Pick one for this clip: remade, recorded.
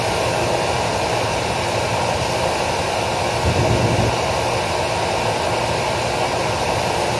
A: recorded